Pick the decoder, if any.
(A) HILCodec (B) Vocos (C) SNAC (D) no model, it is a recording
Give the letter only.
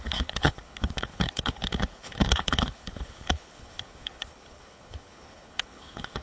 A